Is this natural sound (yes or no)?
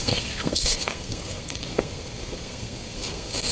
no